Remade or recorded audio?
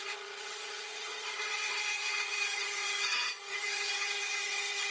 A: remade